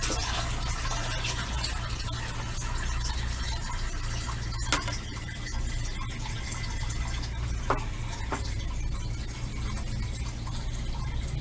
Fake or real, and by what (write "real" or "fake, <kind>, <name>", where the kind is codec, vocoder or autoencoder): real